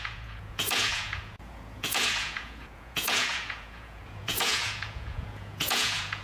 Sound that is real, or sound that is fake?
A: fake